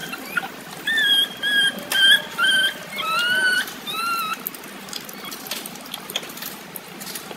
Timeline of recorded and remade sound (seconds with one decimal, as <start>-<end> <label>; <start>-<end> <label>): 0.0-7.4 recorded